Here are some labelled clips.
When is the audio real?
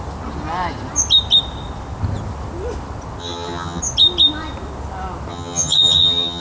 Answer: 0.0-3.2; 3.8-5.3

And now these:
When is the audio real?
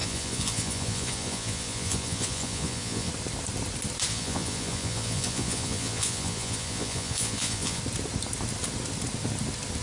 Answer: 3.1-4.1; 7.8-9.8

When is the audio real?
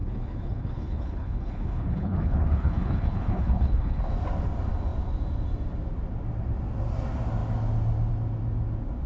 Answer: 4.0-9.1